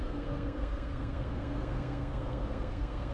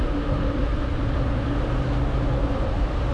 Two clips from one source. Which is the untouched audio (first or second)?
second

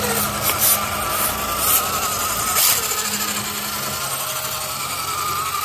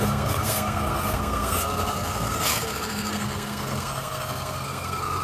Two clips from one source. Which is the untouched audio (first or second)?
first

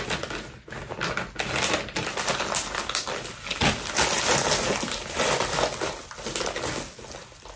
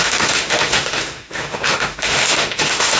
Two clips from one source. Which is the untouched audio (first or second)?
first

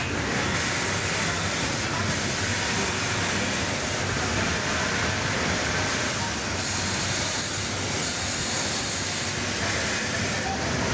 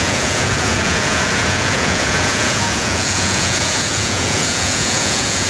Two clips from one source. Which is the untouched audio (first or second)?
first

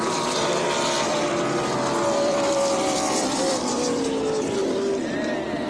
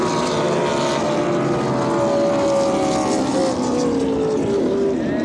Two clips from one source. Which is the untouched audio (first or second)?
second